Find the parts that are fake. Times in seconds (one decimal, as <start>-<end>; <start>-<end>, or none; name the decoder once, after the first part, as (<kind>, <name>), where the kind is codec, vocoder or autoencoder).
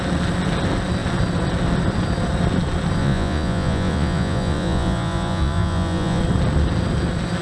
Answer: 3.0-6.2 (vocoder, Vocos)